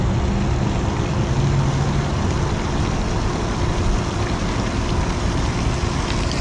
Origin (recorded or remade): recorded